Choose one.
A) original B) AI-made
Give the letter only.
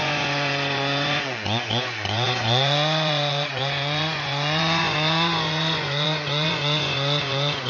B